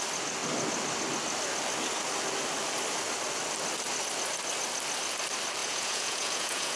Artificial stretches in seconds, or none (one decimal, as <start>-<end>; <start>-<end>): 5.6-6.8